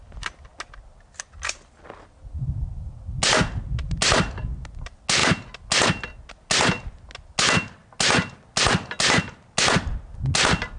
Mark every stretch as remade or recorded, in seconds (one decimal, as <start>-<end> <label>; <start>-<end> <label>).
0.0-10.8 recorded